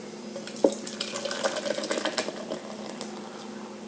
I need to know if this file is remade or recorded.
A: recorded